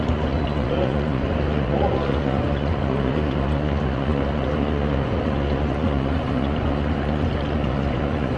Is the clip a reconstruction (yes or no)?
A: yes